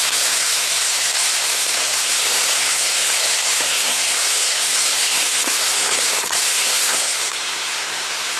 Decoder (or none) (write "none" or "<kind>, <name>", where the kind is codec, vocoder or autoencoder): codec, SNAC